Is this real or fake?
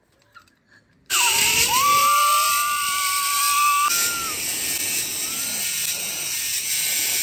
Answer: fake